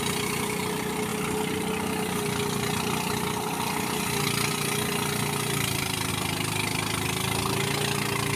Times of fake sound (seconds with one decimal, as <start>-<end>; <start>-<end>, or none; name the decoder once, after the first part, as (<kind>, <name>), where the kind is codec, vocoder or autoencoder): none